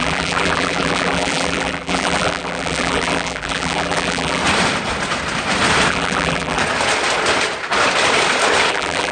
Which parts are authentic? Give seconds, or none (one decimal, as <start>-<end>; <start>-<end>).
4.4-5.9; 6.6-8.7